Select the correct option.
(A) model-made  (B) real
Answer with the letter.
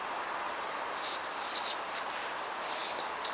B